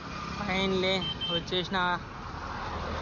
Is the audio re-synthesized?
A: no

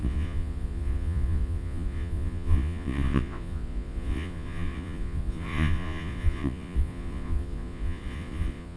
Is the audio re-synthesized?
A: yes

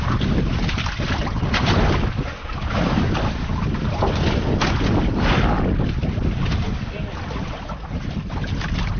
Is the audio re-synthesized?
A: no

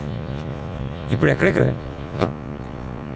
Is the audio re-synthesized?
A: yes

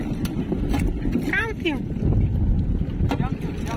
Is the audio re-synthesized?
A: no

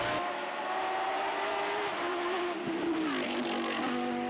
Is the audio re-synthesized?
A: no